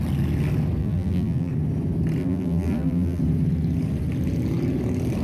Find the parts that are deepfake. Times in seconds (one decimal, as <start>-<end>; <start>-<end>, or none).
0.8-1.5; 2.2-3.2